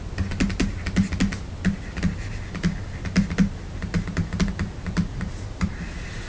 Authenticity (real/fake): real